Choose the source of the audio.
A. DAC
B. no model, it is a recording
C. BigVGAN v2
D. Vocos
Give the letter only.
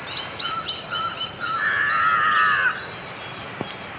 B